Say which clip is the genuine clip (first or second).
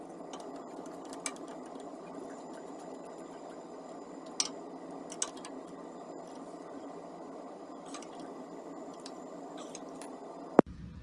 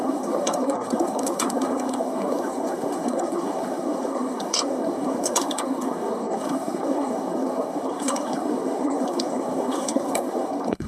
first